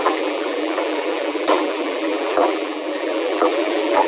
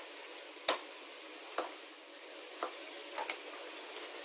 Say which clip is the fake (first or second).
first